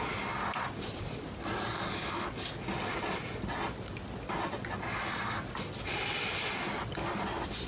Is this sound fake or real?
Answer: real